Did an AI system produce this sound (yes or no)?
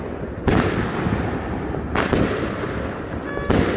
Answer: no